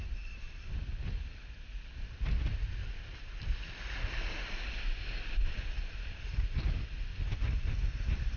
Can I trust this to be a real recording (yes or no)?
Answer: yes